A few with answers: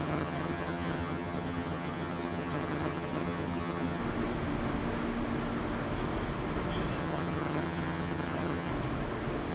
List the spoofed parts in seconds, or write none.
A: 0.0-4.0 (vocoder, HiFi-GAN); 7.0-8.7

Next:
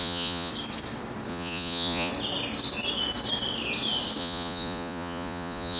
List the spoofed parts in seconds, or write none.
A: 0.0-0.5 (vocoder, Vocos); 1.3-2.1; 4.2-5.8

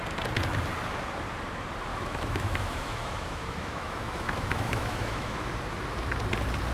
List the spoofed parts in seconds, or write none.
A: 1.9-5.5 (autoencoder, DAC-VAE)

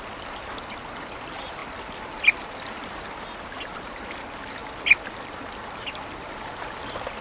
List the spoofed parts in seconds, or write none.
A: none

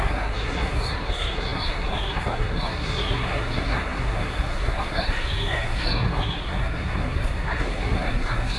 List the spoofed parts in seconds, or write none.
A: 0.0-8.6 (codec, SNAC)

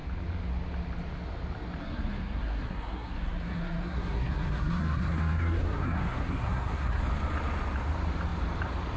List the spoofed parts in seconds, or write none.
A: 1.8-7.0 (codec, SNAC)

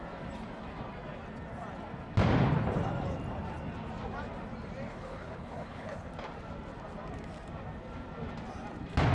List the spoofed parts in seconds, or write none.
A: 4.9-6.1 (codec, HILCodec)

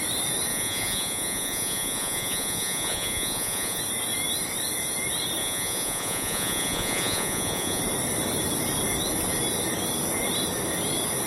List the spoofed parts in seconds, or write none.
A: 0.5-3.8 (vocoder, Vocos); 5.4-7.8